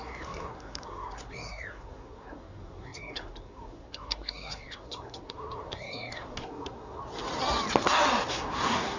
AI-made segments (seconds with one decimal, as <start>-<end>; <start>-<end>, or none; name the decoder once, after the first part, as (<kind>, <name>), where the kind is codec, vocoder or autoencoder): 0.0-7.0 (codec, SNAC); 8.3-9.0